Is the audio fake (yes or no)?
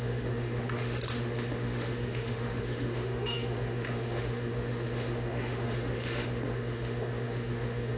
yes